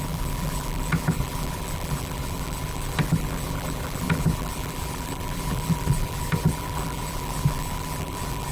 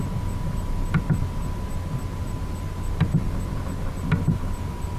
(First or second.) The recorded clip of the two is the second